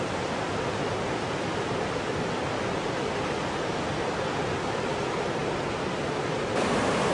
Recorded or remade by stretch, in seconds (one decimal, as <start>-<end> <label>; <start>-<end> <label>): 0.0-7.1 recorded